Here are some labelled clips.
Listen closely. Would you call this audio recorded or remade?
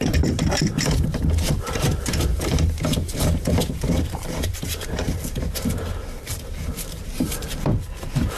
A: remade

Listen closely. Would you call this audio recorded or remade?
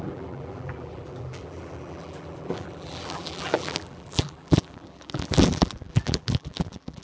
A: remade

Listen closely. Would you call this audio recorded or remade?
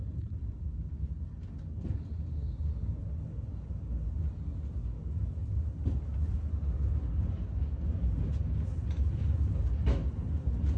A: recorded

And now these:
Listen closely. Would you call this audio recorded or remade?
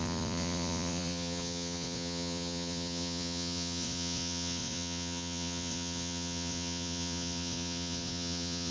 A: remade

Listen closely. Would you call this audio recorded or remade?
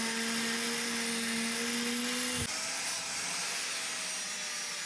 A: recorded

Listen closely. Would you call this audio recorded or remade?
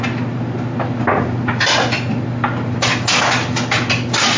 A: recorded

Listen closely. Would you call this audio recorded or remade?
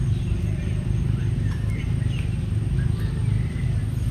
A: recorded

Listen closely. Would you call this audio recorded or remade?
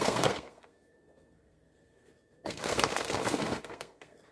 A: remade